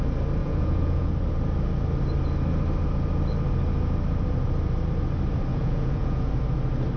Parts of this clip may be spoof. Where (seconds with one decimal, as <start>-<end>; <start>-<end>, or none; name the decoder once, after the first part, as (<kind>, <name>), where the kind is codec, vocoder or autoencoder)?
0.4-1.1 (vocoder, Vocos); 5.5-6.3